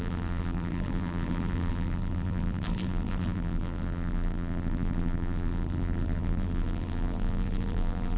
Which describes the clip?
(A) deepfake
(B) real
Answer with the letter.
A